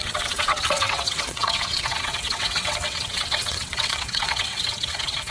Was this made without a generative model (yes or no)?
no